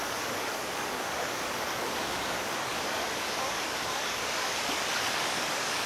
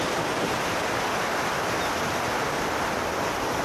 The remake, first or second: first